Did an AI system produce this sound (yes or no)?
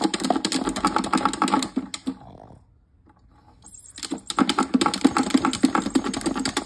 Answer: no